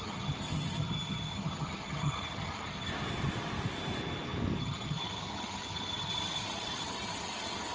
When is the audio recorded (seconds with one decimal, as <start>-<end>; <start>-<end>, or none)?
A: 2.9-4.6